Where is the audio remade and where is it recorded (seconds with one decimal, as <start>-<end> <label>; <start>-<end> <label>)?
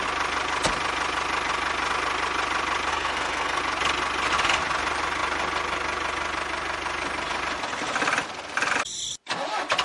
0.0-2.9 recorded; 2.9-3.6 remade; 3.6-9.8 recorded